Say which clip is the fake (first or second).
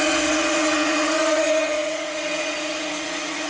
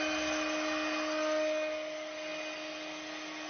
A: first